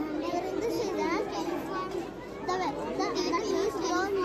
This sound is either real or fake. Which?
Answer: real